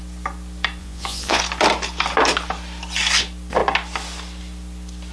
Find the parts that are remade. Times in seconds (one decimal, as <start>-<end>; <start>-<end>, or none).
0.8-1.4